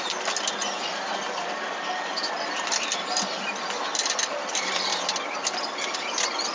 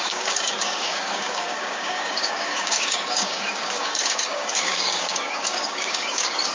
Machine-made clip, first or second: second